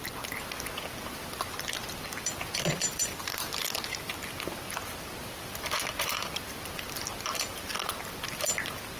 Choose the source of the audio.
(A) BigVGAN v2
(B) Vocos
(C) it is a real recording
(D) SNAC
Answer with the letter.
A